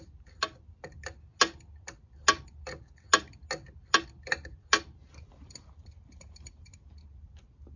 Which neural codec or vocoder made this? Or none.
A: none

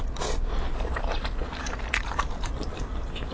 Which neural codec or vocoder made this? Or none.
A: none